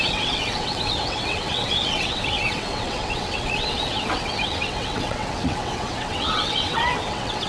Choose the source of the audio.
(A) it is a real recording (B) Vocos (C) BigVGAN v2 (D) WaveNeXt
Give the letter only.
D